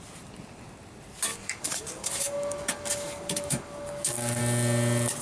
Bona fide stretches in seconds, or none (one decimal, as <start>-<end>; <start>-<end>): 0.0-1.3; 4.4-5.2